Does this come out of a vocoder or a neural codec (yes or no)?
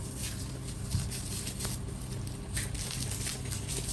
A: no